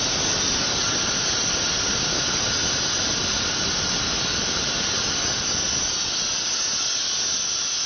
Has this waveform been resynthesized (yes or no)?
no